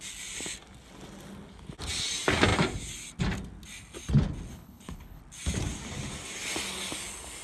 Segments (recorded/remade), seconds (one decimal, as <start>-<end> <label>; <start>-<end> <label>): 0.0-4.5 recorded; 4.5-5.2 remade; 5.2-7.4 recorded